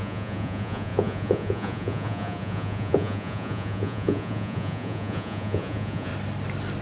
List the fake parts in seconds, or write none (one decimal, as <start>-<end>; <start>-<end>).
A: 0.0-6.1